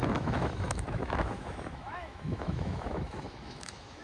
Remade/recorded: remade